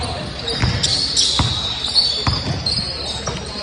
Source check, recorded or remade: recorded